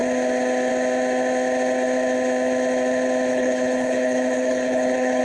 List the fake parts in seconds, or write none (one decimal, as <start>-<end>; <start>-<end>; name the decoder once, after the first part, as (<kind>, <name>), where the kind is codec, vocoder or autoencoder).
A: 3.3-5.2 (codec, HILCodec)